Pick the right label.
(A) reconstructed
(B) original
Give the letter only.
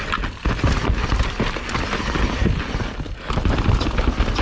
B